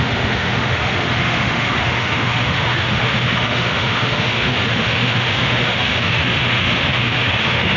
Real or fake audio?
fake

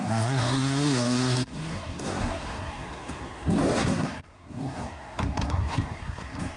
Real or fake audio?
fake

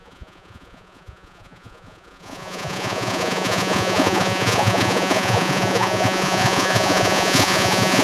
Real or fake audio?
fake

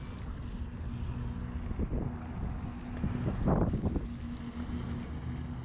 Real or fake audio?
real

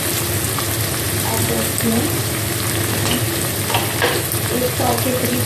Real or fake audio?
real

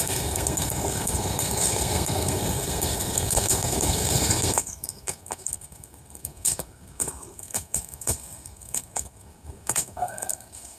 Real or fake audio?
fake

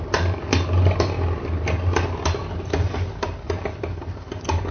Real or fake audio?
real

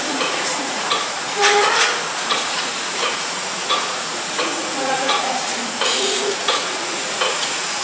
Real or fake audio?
fake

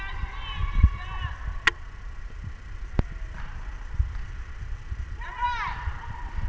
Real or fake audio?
real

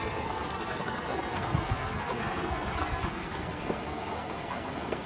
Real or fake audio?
fake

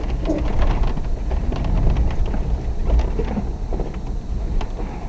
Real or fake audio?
real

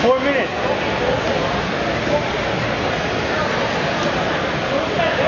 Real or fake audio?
real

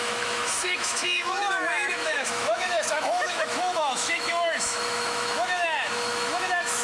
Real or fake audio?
fake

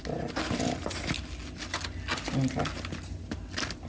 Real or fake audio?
real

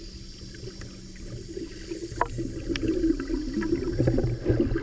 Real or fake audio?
real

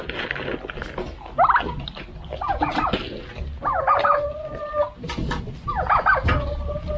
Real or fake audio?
real